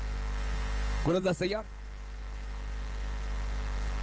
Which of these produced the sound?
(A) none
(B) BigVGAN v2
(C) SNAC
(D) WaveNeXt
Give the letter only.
B